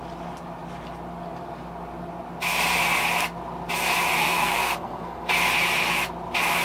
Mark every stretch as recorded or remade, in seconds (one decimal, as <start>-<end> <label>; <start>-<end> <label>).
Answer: 0.0-4.2 recorded; 4.2-5.3 remade; 5.3-6.6 recorded

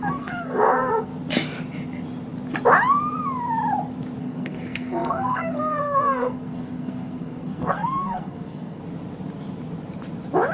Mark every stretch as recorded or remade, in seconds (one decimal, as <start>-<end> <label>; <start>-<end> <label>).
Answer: 0.0-1.1 remade; 1.1-4.2 recorded; 4.2-8.8 remade; 8.8-10.5 recorded

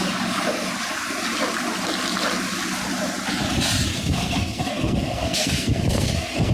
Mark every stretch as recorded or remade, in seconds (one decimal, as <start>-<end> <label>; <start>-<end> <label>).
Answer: 0.0-3.9 recorded; 3.9-6.5 remade